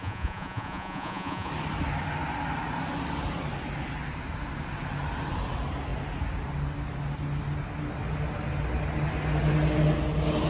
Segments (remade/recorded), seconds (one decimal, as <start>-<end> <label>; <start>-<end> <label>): 0.0-1.5 remade; 1.5-10.5 recorded